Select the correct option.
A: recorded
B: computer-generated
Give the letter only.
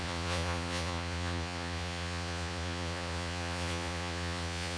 B